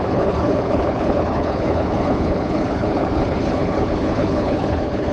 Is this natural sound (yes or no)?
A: no